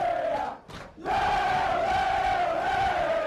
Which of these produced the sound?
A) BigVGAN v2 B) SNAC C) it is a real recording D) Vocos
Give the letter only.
C